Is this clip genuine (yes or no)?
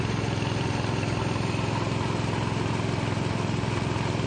yes